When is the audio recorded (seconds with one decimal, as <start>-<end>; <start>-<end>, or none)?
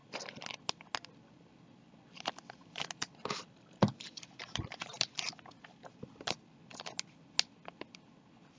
0.0-4.4; 5.2-8.6